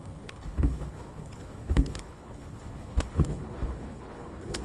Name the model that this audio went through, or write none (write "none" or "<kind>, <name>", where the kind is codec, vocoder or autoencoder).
codec, HILCodec